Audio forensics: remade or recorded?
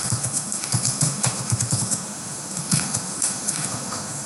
remade